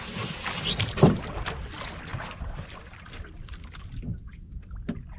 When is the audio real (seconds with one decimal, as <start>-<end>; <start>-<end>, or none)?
0.0-5.2